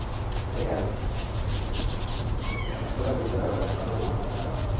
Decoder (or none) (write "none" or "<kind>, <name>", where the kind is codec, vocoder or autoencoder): vocoder, Vocos